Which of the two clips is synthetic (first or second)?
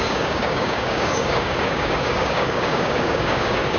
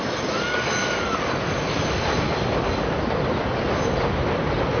first